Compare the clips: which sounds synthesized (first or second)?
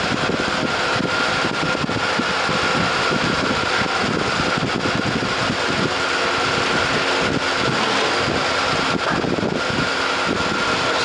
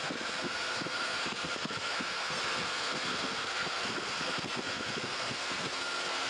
second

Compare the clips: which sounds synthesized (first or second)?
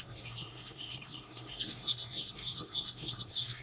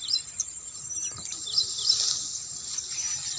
first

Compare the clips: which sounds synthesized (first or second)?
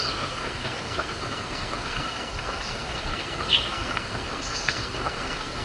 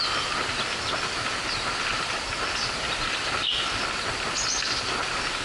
first